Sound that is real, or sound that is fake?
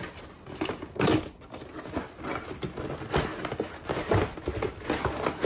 real